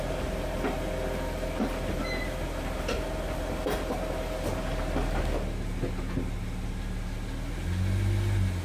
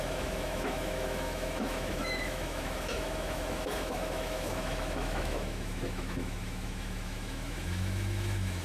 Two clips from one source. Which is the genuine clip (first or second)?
first